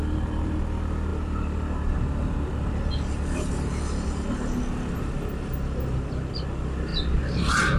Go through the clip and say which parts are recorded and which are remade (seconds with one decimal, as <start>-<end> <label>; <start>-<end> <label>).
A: 0.0-7.8 recorded

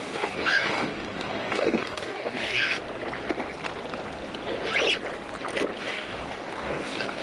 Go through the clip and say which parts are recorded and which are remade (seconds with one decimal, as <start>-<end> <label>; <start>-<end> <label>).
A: 0.0-2.8 remade; 2.8-5.8 recorded; 5.8-7.2 remade

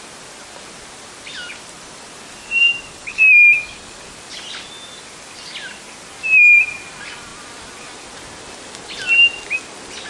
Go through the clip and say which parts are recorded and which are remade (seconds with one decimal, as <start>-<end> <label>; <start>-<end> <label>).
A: 0.0-2.4 recorded; 2.4-4.0 remade; 4.0-10.1 recorded

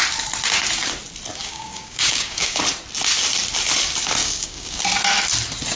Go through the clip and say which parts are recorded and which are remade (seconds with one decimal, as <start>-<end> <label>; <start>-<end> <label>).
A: 0.0-1.4 recorded; 1.4-2.6 remade; 2.6-4.2 recorded; 4.2-4.8 remade; 4.8-5.8 recorded

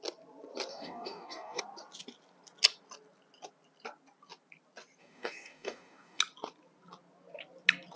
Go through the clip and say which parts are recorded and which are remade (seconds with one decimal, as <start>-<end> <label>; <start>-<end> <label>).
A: 0.0-0.7 recorded; 0.7-1.6 remade; 1.6-5.0 recorded; 5.0-6.2 remade; 6.2-8.0 recorded

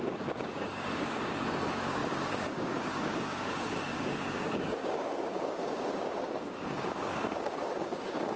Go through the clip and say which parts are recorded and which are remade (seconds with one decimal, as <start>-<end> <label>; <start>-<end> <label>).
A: 0.0-8.4 remade

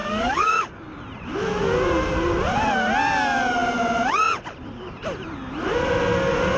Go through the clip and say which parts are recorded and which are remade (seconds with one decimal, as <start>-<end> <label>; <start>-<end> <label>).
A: 0.0-0.7 remade; 0.7-6.6 recorded

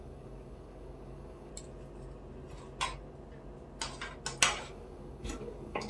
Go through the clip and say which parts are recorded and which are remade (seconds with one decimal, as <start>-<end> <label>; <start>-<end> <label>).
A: 0.0-1.5 remade; 1.5-4.6 recorded; 4.6-5.9 remade